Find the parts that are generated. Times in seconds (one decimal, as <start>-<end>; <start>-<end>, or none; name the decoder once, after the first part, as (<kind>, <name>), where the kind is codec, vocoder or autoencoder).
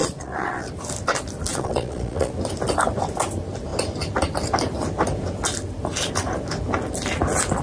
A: 0.0-0.7 (vocoder, Vocos); 1.5-2.3